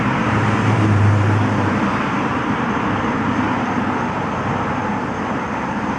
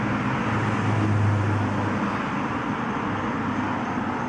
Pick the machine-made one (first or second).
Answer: first